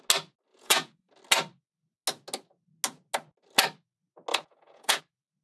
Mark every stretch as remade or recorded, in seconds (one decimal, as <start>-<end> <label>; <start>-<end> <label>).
0.0-0.5 recorded; 0.5-1.1 remade; 1.1-4.3 recorded; 4.3-5.0 remade; 5.0-5.4 recorded